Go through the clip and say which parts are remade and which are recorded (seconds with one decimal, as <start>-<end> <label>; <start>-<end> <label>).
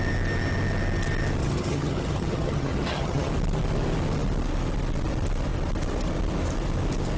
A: 0.0-1.4 recorded; 1.4-3.3 remade; 3.3-7.2 recorded